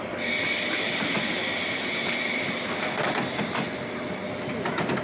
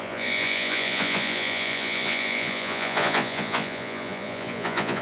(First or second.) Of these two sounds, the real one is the first